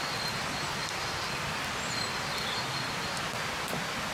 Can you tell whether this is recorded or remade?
recorded